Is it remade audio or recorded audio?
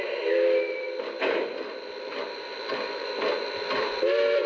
recorded